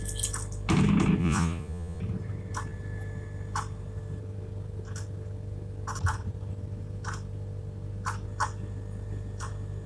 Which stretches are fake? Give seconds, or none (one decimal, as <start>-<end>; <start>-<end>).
1.2-2.0